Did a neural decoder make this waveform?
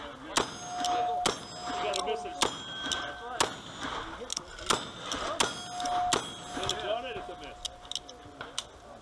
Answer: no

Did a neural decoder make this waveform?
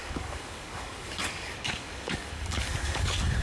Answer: yes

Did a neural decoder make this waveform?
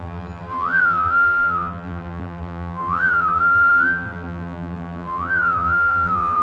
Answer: yes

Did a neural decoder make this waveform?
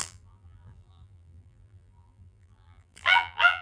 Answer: yes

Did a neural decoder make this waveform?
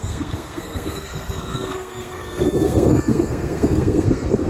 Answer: yes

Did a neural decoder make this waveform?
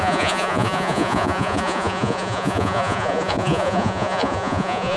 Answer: yes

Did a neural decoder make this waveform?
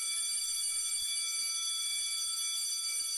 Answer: no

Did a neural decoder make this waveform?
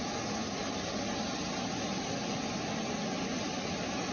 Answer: no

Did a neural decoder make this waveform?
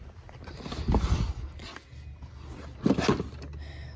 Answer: no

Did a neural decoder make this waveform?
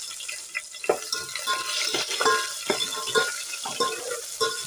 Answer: no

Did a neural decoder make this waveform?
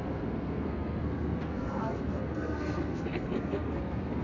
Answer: yes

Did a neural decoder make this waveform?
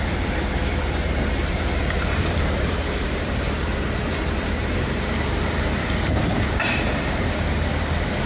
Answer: yes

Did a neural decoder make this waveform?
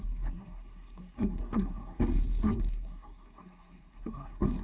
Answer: yes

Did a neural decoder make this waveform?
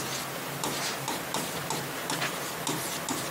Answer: no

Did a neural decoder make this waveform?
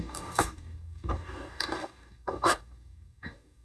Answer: yes